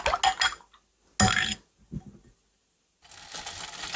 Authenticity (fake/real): real